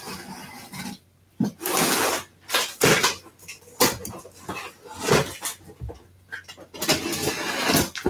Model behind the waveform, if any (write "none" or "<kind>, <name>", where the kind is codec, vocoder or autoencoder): none